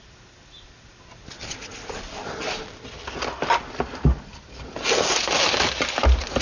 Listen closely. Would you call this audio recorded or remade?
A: recorded